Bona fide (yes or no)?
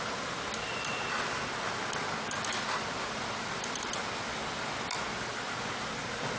yes